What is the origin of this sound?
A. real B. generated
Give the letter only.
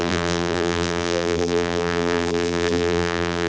B